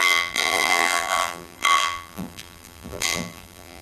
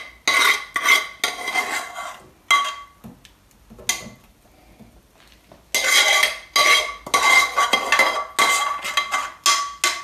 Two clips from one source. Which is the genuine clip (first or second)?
second